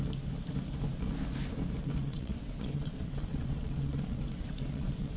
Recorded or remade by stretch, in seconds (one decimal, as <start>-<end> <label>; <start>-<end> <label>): 0.0-2.0 recorded; 2.0-5.2 remade